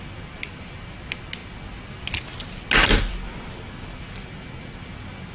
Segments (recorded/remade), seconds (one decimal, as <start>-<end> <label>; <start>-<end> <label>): 0.0-5.3 recorded